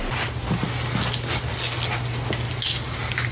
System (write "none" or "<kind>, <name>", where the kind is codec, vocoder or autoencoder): none